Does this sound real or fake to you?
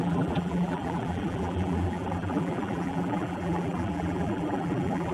fake